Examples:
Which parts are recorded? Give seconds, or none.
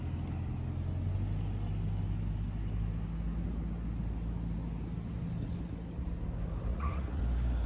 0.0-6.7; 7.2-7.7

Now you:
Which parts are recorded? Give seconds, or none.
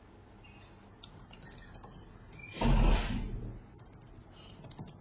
0.0-5.0